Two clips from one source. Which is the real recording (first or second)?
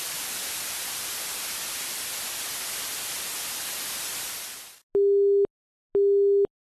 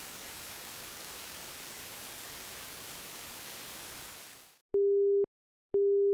first